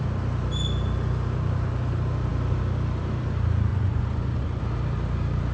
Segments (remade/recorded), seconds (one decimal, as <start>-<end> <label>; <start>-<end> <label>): 0.0-3.7 recorded; 3.7-4.6 remade; 4.6-5.5 recorded